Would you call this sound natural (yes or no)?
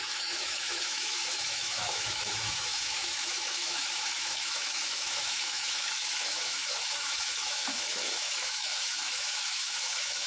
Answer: no